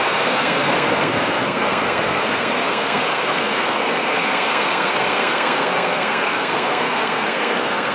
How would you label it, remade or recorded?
remade